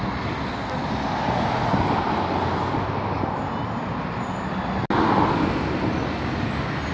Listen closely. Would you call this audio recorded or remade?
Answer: recorded